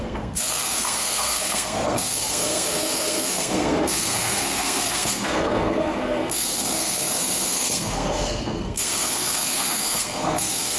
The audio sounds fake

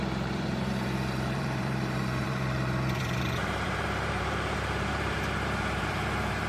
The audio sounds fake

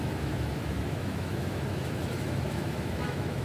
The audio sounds fake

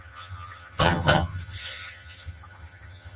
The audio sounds fake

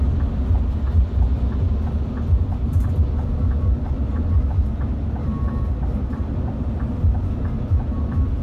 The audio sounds real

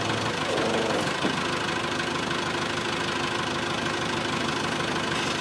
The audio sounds real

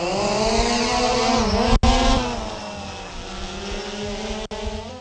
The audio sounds real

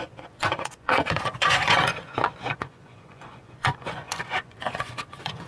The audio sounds fake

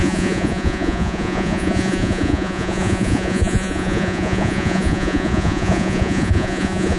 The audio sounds fake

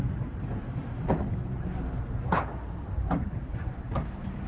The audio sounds fake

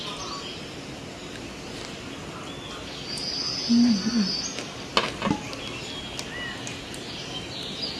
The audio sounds real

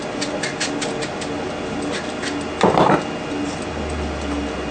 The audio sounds real